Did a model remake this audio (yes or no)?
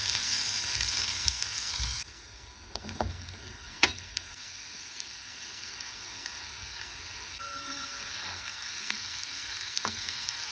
yes